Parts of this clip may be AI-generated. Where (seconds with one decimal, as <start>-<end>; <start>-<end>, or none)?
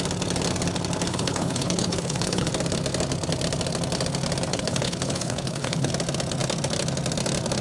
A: 1.1-2.5; 4.5-5.9